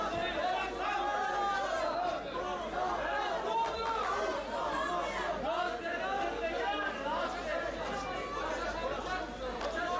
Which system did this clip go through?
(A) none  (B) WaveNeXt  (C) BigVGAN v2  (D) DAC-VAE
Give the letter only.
A